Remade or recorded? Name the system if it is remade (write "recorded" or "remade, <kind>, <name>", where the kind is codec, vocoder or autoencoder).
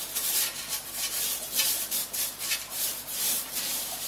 remade, vocoder, BigVGAN v2